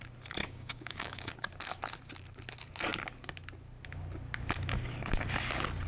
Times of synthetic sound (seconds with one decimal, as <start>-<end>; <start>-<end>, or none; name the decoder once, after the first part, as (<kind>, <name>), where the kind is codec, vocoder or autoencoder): 0.4-1.3 (codec, DAC)